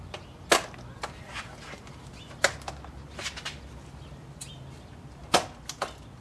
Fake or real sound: real